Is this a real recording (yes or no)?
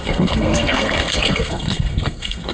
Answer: no